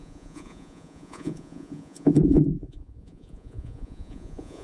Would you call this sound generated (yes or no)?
yes